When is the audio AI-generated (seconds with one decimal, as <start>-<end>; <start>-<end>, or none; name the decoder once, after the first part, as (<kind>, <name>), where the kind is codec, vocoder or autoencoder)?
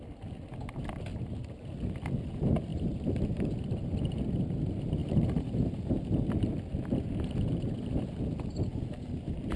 1.1-1.9 (vocoder, BigVGAN v2); 2.7-3.6; 5.0-5.8